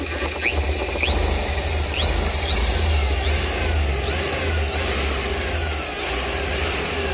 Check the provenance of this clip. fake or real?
real